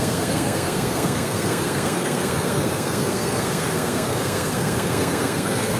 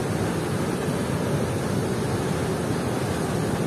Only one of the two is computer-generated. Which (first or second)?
first